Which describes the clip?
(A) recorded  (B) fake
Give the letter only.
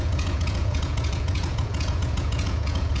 B